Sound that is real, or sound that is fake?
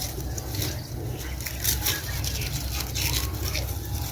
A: real